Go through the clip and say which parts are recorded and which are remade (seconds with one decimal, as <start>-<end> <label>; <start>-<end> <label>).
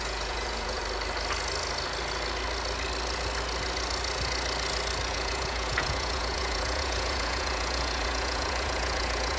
0.0-0.8 remade; 0.8-5.1 recorded; 5.1-9.4 remade